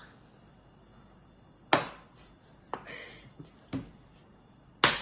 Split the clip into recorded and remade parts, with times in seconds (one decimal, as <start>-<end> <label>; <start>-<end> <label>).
0.0-5.0 recorded